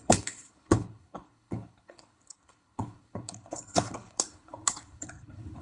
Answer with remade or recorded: remade